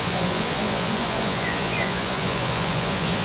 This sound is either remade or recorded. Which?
remade